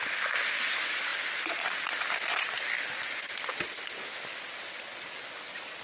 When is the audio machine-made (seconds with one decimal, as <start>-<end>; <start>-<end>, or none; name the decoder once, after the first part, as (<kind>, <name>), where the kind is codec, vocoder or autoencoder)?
none